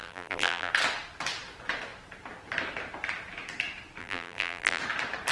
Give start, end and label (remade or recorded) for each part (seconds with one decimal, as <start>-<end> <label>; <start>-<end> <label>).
0.0-0.7 remade; 0.7-4.0 recorded; 4.0-4.8 remade; 4.8-5.3 recorded